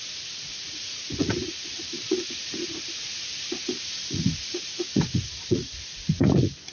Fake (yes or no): yes